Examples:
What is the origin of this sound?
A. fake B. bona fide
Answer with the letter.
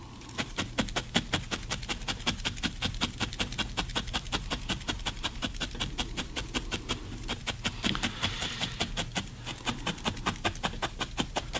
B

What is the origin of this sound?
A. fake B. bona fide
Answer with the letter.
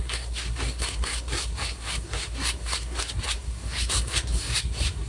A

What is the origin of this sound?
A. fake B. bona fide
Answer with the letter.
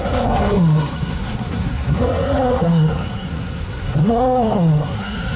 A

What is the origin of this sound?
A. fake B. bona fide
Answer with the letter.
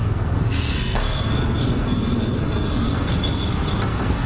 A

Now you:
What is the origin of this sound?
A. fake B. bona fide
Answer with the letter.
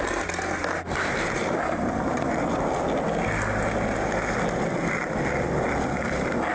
B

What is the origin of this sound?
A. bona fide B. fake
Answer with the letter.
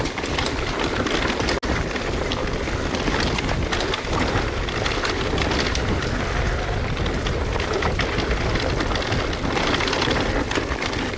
A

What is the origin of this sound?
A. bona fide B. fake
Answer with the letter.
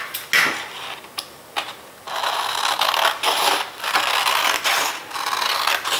A